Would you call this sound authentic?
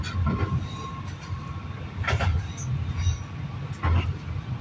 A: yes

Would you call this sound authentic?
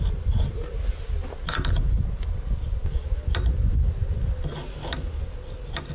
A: yes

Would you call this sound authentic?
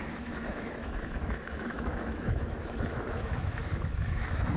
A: no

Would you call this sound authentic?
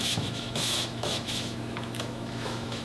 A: no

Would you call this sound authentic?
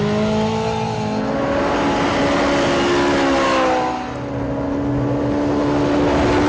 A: yes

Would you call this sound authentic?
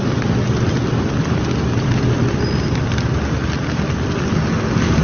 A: yes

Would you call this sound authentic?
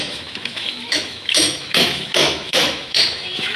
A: no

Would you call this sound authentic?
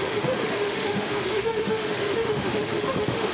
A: no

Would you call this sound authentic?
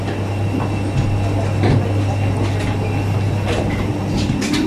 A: yes